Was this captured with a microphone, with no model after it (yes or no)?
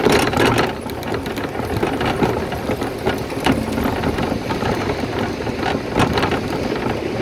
yes